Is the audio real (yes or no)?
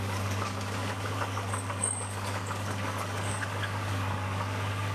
no